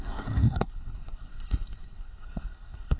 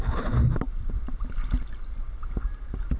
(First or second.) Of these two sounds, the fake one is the first